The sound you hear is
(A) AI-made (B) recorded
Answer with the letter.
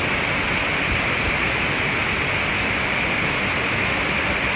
B